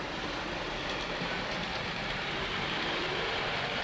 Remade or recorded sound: recorded